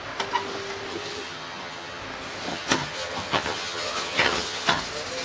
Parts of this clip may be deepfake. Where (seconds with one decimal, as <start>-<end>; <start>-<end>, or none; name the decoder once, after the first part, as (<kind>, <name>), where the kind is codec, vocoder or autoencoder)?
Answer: 0.9-2.0 (vocoder, HiFi-GAN); 2.5-4.8